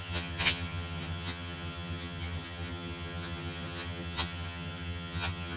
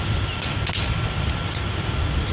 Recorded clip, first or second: second